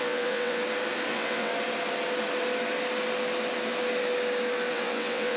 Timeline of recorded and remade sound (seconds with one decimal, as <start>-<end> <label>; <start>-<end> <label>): 0.0-0.6 remade; 0.6-1.1 recorded; 1.1-1.5 remade; 1.5-4.7 recorded; 4.7-5.4 remade